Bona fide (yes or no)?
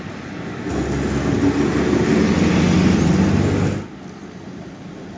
yes